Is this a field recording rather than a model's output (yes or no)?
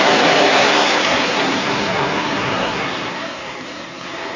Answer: no